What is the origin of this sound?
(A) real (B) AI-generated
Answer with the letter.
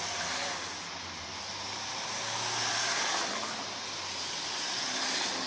A